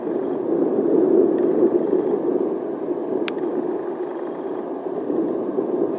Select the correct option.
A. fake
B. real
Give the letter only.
B